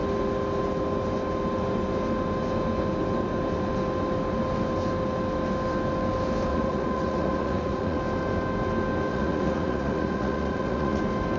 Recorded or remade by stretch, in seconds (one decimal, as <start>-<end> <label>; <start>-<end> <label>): 0.0-6.5 recorded; 6.5-8.0 remade; 8.0-9.1 recorded; 9.1-11.0 remade; 11.0-11.4 recorded